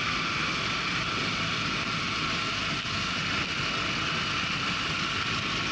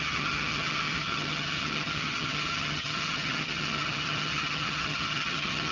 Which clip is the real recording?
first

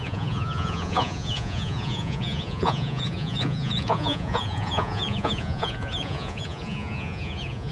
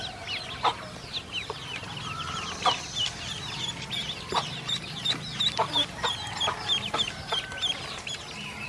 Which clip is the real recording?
second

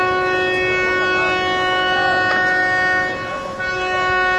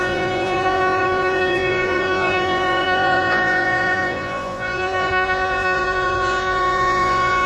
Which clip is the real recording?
first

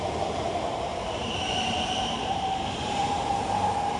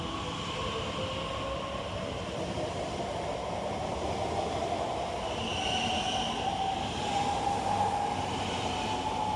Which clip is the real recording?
second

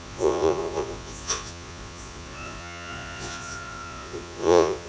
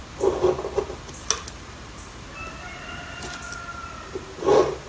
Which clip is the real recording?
second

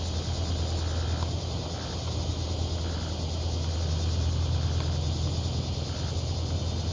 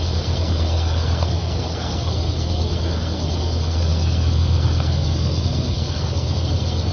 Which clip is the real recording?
first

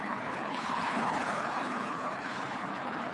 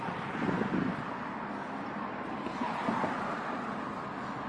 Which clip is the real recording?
second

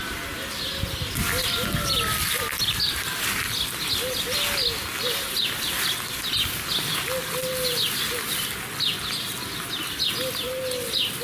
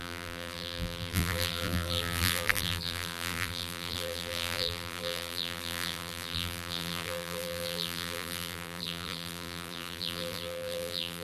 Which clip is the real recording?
first